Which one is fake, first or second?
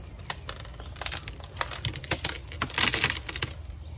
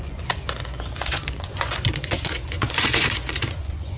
second